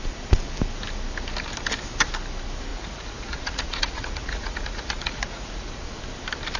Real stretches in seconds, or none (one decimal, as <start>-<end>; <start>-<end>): 0.0-2.7; 6.0-6.6